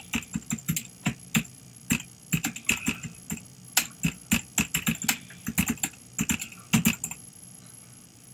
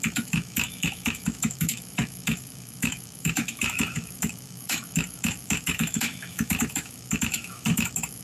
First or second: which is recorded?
first